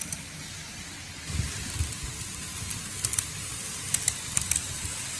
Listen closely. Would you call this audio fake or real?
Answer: real